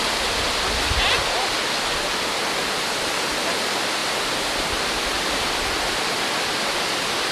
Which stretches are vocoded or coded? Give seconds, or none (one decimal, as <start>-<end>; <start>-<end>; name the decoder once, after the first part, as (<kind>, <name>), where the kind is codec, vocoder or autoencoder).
none